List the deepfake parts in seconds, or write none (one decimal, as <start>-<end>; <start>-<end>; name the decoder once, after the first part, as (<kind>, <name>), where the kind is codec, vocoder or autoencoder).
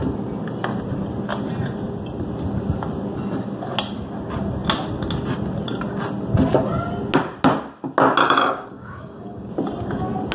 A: 8.2-9.5 (codec, DAC)